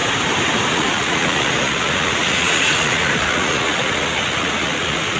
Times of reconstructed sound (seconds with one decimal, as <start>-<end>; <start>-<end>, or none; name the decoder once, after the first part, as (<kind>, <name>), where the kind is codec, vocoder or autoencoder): 0.7-5.2 (vocoder, Vocos)